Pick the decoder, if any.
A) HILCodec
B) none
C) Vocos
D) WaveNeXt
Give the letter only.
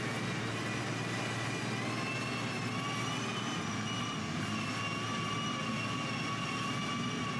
B